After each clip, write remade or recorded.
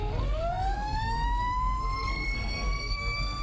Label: remade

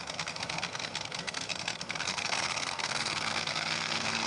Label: remade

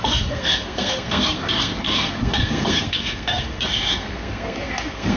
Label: remade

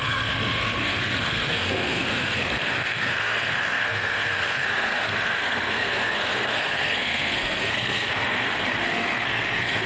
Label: remade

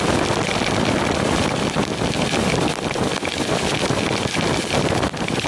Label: recorded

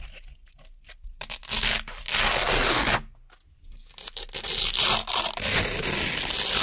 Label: recorded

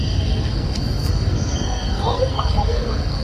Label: remade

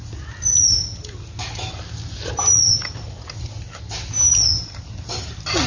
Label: recorded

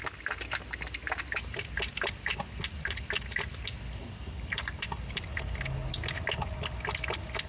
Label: recorded